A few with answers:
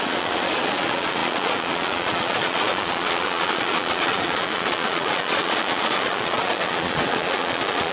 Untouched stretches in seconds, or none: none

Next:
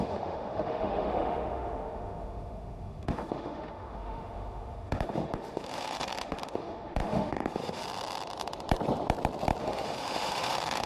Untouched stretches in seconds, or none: 7.8-9.6

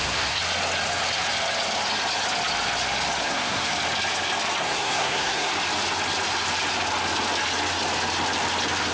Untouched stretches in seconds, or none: 0.4-3.2; 3.7-4.6; 5.5-8.9

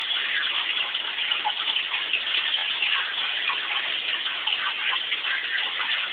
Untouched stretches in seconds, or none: 1.5-6.1

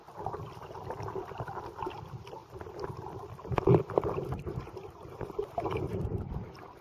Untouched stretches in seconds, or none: 0.0-2.4; 6.2-6.8

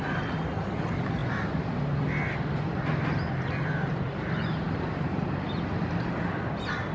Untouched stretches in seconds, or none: 0.0-6.9

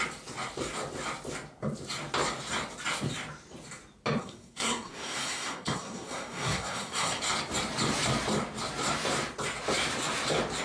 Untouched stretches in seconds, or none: 0.0-4.2; 7.2-10.6